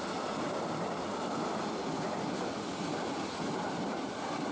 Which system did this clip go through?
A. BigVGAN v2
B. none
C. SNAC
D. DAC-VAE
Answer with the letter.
B